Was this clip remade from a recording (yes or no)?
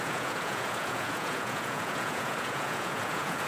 yes